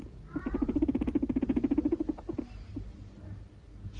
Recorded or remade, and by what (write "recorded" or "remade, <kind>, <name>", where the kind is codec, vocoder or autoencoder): recorded